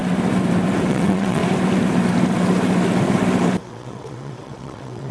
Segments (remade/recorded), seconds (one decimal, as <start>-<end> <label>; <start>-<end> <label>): 0.0-0.9 recorded; 0.9-1.4 remade; 1.4-3.6 recorded; 3.6-5.1 remade